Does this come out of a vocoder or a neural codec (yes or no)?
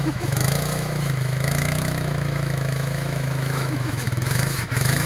yes